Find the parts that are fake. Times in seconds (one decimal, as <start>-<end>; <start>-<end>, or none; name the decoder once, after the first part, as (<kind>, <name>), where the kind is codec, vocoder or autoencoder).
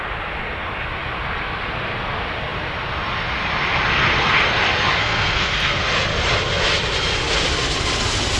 5.0-5.8 (codec, SNAC)